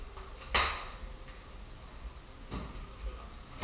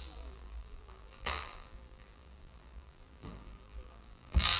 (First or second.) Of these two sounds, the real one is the first